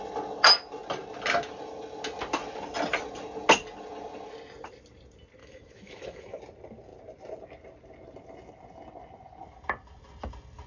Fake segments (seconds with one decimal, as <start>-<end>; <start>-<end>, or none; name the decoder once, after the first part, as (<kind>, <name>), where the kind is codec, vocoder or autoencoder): 5.4-6.4 (autoencoder, DAC-VAE)